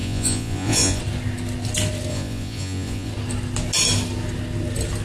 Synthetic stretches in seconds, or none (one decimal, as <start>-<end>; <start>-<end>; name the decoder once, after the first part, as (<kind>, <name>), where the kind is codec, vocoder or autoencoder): 0.0-1.0 (vocoder, Vocos); 2.1-3.1